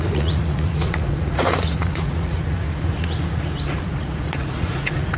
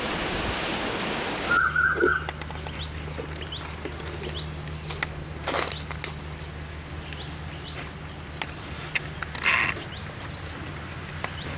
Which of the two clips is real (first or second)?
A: second